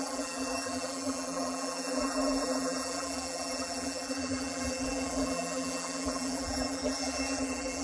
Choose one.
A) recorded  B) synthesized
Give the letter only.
B